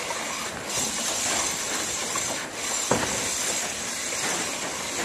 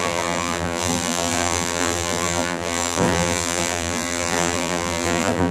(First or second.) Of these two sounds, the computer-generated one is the second